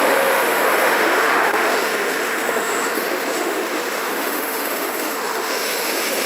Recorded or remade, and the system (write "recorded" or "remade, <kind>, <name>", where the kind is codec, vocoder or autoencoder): remade, autoencoder, DAC-VAE